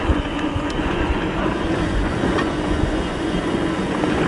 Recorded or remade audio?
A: remade